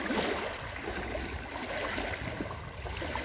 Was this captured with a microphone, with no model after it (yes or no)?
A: yes